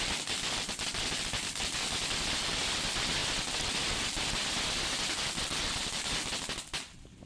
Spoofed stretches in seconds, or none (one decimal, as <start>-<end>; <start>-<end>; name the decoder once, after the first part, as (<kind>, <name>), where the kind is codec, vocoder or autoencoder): none